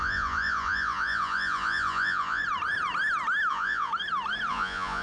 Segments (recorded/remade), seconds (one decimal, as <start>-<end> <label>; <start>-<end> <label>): 0.0-2.4 remade; 2.4-3.5 recorded; 3.5-3.9 remade; 3.9-4.5 recorded; 4.5-5.0 remade